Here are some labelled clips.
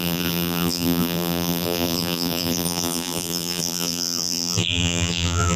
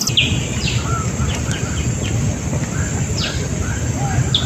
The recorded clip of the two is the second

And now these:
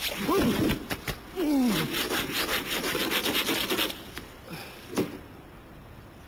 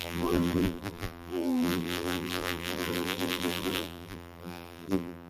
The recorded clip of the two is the first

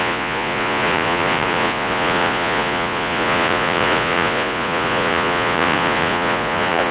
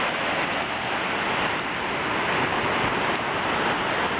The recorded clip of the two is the second